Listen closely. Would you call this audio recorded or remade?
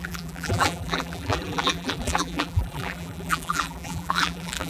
remade